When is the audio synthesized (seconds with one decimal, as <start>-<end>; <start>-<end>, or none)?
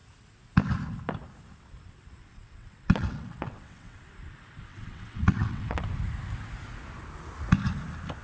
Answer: 2.3-4.0; 4.7-5.8